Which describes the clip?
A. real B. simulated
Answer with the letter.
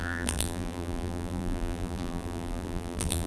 B